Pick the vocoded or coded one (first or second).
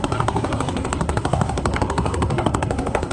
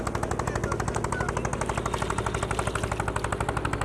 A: first